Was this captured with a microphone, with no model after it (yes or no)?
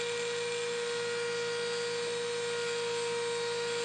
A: yes